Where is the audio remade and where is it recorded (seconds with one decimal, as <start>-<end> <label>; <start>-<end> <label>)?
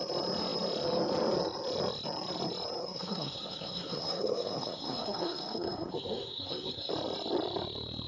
0.0-2.8 recorded; 2.8-6.9 remade; 6.9-8.1 recorded